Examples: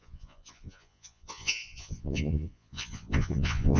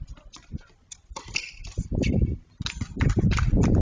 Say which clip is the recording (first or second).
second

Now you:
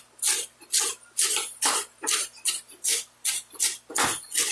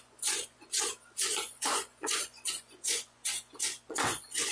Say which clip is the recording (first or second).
first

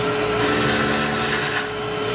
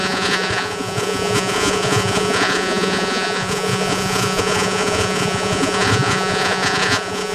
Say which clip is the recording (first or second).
first